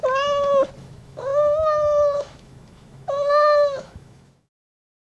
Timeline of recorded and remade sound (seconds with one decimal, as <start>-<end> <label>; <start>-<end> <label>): 0.0-0.8 recorded; 0.8-5.2 remade

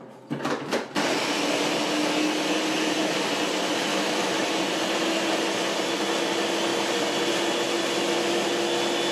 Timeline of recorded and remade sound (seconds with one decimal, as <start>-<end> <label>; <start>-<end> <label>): 0.0-3.9 recorded; 3.9-4.5 remade; 4.5-9.1 recorded